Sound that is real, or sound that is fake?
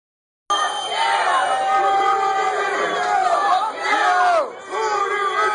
real